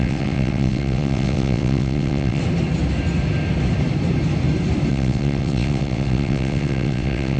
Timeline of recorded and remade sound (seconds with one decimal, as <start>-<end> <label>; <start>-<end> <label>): 0.0-2.4 remade; 2.4-4.9 recorded; 4.9-7.4 remade